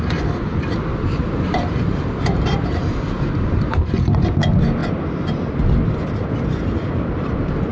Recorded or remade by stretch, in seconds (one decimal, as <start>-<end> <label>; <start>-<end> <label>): 0.0-0.9 recorded; 0.9-3.9 remade; 3.9-7.7 recorded

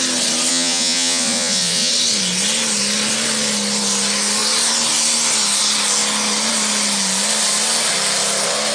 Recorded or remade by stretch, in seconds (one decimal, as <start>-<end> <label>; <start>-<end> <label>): 0.0-0.5 recorded; 0.5-1.9 remade; 1.9-8.7 recorded

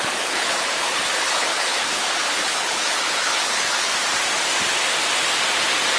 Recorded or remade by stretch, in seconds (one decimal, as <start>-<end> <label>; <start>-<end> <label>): 0.0-3.9 remade; 3.9-6.0 recorded

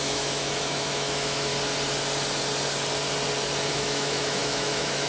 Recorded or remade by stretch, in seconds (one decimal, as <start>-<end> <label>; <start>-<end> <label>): 0.0-1.5 remade; 1.5-3.7 recorded; 3.7-5.1 remade

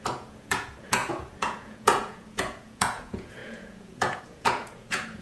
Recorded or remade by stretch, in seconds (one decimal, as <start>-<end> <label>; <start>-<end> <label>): 0.0-5.2 remade

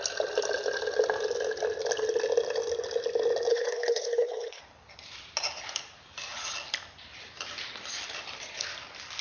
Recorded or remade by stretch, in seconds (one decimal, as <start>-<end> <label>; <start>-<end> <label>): 0.0-3.5 recorded; 3.5-4.6 remade; 4.6-9.2 recorded

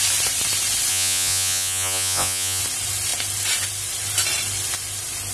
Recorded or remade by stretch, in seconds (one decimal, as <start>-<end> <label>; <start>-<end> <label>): 0.0-0.9 recorded; 0.9-2.6 remade; 2.6-5.3 recorded

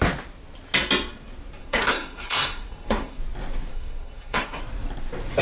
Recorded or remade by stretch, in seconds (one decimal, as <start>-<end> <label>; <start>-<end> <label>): 0.0-1.6 recorded; 1.6-3.2 remade; 3.2-3.7 recorded; 3.7-4.6 remade; 4.6-5.4 recorded